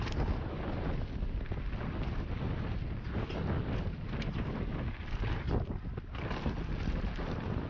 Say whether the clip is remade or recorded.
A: recorded